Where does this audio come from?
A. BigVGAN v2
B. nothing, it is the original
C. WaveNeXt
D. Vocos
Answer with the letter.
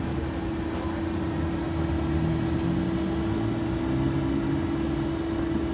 B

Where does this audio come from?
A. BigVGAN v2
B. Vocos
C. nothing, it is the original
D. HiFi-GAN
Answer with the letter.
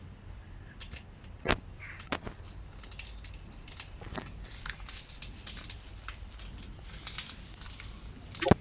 C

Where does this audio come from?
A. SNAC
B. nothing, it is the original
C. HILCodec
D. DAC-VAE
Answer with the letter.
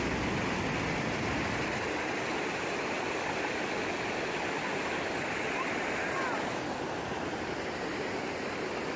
B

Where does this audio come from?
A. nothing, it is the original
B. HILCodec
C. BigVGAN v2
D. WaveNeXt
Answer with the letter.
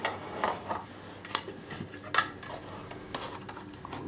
A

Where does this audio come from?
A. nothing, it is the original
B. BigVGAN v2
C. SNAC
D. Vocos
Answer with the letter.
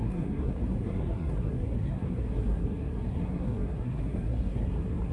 C